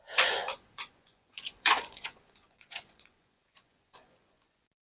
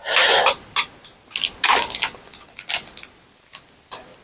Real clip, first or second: second